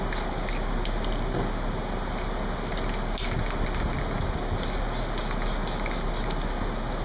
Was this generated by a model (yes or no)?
no